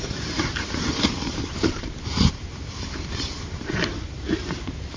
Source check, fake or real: fake